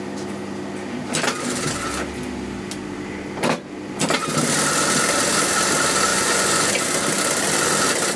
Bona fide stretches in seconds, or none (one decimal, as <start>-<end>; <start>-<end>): 0.0-6.1; 6.7-8.2